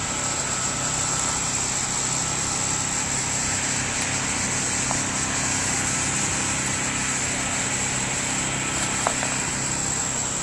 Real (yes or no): yes